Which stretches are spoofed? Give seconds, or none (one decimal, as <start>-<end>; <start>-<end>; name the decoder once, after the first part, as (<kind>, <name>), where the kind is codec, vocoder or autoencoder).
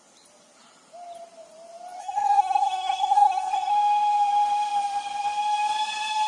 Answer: 2.0-3.7 (codec, SNAC)